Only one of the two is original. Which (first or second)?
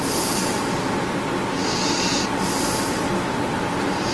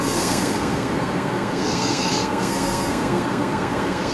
first